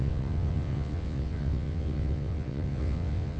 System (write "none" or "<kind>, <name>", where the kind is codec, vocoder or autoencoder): vocoder, WaveNeXt